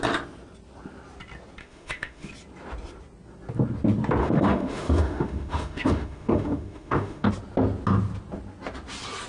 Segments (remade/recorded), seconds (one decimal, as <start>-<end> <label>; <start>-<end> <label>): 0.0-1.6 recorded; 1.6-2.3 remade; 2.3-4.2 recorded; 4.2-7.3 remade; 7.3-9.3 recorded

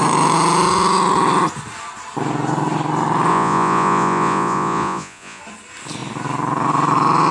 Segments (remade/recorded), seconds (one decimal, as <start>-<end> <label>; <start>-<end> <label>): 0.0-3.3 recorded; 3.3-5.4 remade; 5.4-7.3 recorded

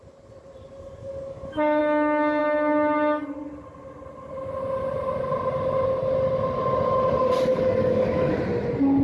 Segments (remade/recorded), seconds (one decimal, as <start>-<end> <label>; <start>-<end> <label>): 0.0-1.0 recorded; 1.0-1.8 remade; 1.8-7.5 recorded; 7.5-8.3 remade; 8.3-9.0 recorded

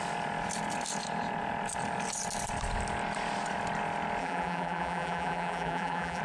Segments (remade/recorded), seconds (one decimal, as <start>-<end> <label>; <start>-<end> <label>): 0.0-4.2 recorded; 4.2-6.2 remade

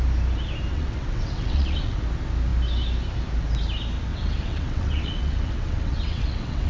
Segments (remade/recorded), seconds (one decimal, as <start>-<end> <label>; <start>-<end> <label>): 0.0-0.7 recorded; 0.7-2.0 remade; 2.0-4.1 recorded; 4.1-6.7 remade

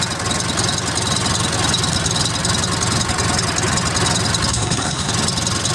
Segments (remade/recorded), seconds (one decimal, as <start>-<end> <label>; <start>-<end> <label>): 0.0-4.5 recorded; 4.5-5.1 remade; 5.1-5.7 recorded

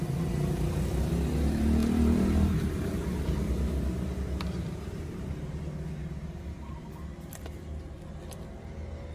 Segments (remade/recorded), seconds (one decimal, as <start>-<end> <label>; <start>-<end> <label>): 0.0-1.8 recorded; 1.8-5.3 remade; 5.3-6.0 recorded; 6.0-6.9 remade; 6.9-9.1 recorded